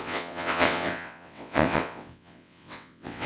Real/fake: fake